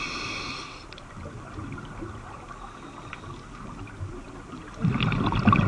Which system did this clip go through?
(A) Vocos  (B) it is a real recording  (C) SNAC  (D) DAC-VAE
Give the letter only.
B